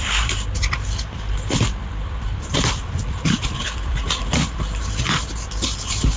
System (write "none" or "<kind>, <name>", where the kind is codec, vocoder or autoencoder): none